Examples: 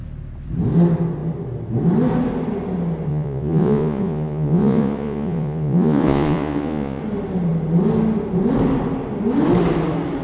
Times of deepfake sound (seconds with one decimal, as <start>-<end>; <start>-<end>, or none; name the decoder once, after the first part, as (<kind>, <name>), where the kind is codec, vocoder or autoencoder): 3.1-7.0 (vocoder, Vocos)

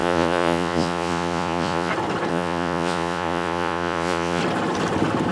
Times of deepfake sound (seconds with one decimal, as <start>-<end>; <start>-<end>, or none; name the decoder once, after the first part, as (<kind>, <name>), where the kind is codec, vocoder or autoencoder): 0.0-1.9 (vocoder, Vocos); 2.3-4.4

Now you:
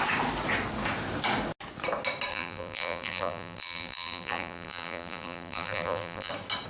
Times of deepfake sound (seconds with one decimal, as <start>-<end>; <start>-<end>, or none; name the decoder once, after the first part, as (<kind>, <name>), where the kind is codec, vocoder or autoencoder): 2.3-6.3 (vocoder, BigVGAN v2)

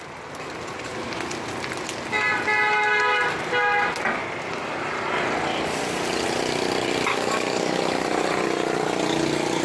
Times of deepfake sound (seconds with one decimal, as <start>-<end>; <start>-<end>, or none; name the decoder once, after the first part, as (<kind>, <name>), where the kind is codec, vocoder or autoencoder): 7.1-7.8 (codec, DAC)

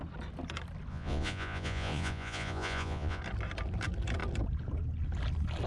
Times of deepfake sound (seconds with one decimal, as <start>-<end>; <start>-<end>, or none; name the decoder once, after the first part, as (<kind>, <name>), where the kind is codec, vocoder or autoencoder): 0.9-3.2 (vocoder, Vocos)

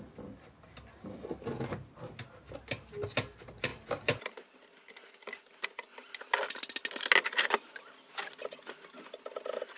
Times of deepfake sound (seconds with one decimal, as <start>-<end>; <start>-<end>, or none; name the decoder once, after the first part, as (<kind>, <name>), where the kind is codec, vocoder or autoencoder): none

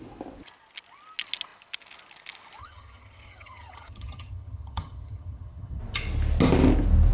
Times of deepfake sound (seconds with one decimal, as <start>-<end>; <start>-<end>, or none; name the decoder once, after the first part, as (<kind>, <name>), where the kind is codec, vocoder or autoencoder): 2.6-5.8 (vocoder, HiFi-GAN)

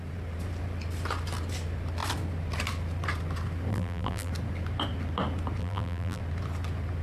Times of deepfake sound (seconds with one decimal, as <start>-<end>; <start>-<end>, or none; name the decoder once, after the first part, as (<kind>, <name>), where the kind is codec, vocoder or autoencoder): 3.7-4.3 (vocoder, BigVGAN v2); 5.6-6.2